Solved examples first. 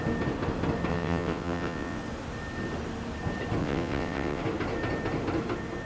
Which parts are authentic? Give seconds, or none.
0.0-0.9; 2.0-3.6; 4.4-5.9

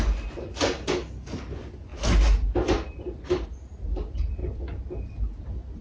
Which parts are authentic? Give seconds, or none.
0.0-5.8

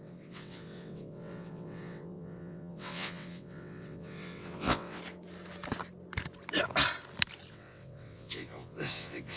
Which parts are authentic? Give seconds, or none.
5.0-7.5

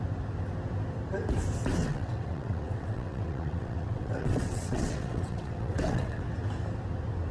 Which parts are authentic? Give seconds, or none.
0.0-1.8; 6.2-7.3